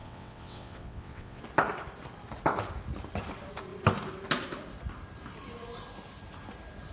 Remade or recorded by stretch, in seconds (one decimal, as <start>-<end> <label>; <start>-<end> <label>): 0.0-1.4 remade; 1.4-6.9 recorded